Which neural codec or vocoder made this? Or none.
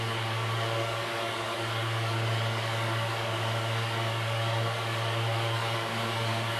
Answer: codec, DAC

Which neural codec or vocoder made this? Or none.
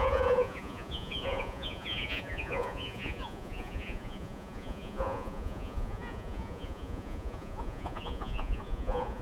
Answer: vocoder, Vocos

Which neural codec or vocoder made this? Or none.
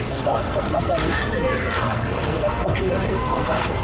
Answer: codec, SNAC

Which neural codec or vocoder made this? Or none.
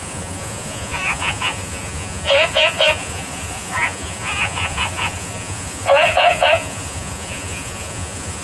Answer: vocoder, Vocos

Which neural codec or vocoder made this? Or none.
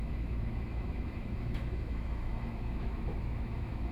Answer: autoencoder, DAC-VAE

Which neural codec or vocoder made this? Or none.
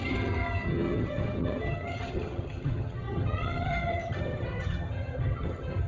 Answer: vocoder, HiFi-GAN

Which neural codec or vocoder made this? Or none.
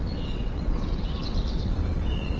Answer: vocoder, WaveNeXt